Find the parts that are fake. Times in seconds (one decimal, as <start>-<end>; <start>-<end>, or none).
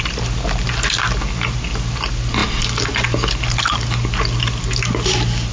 none